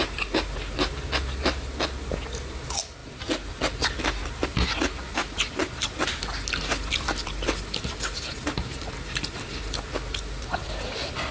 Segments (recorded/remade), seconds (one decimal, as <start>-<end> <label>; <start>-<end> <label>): 0.0-11.3 recorded